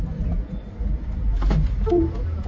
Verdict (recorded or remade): recorded